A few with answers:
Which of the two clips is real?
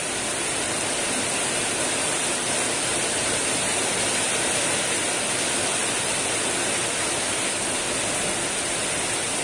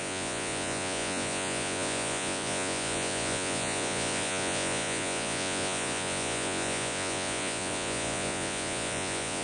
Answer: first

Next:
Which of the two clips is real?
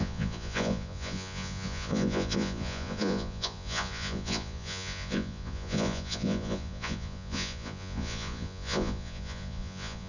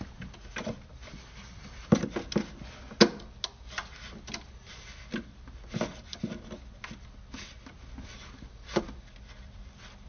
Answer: second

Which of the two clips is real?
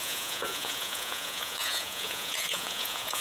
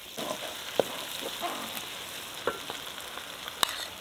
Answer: second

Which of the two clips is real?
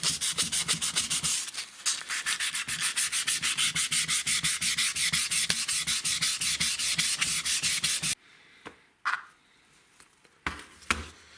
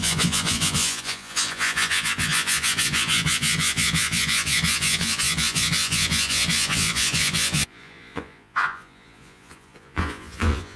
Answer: first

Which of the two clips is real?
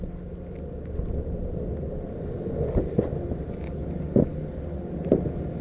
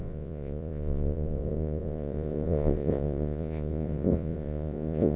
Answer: first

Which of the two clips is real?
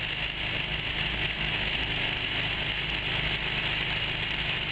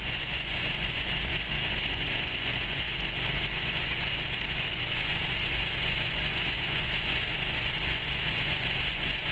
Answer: first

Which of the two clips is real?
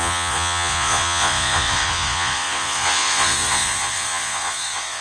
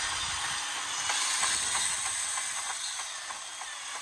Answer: second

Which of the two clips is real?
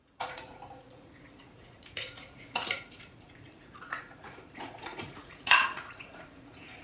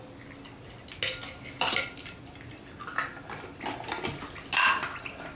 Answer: second